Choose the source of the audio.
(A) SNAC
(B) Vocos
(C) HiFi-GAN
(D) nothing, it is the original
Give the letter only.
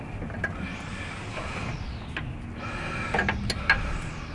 D